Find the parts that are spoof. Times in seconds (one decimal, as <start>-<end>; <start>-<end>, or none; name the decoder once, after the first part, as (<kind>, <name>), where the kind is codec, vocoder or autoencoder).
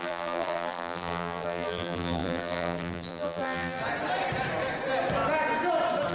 0.0-3.8 (vocoder, BigVGAN v2)